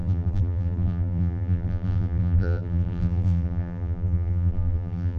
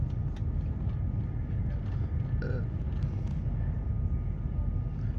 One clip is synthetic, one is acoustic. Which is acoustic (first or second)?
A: second